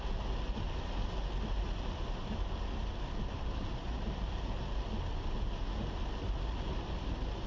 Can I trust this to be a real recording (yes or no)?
yes